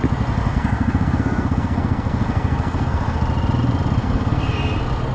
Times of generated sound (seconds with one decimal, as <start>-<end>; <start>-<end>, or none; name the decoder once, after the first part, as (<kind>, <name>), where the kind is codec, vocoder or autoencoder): 0.5-3.2 (codec, SNAC); 4.0-4.6